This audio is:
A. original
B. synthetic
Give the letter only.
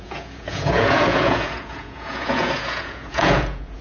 B